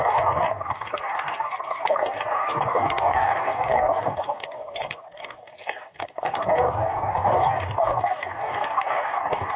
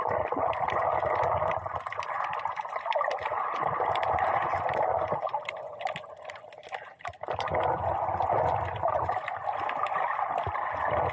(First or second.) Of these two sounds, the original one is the second